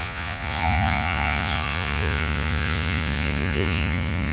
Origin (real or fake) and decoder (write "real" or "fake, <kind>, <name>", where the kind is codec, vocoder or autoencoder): fake, vocoder, Vocos